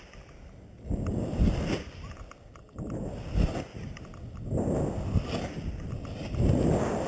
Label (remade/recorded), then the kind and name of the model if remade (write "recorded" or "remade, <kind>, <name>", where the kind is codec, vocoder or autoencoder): recorded